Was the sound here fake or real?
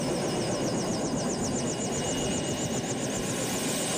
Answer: real